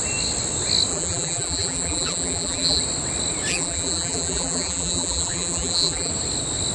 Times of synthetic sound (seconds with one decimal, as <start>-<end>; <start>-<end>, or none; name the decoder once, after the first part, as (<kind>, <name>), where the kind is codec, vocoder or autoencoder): 0.9-2.8 (vocoder, BigVGAN v2); 3.5-6.1